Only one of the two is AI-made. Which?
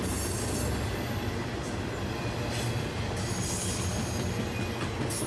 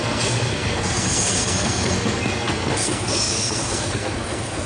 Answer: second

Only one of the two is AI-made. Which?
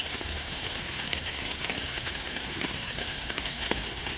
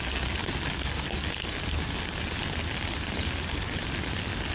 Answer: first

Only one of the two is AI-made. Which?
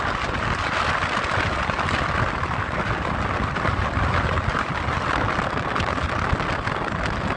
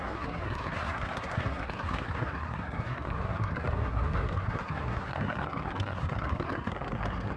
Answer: second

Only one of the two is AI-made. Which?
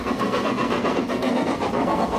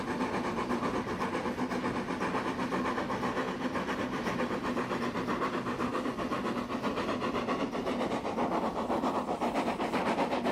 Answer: first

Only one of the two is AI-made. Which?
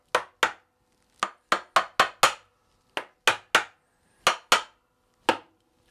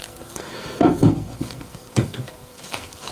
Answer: second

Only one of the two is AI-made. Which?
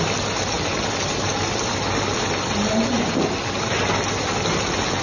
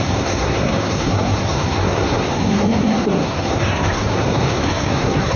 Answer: second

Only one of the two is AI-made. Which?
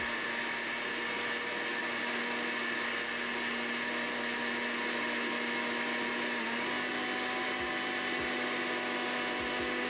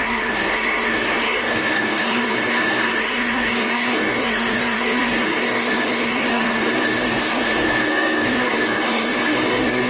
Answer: second